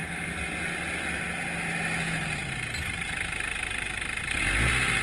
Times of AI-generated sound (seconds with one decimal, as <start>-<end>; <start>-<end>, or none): none